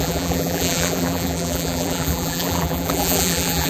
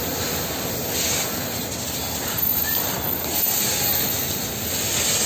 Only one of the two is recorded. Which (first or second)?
second